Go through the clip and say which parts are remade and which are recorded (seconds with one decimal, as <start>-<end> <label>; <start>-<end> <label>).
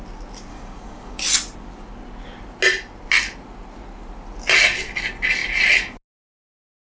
0.0-0.5 recorded; 0.5-1.2 remade; 1.2-6.9 recorded